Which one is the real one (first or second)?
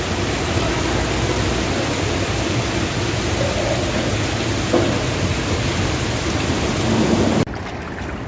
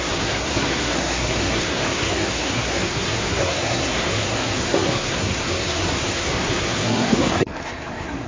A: first